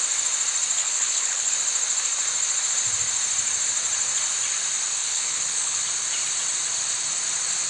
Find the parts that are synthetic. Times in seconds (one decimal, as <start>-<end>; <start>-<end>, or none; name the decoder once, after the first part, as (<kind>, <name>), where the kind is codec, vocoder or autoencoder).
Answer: 0.8-1.5 (codec, HILCodec); 5.0-5.8